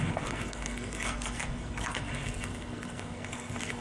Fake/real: fake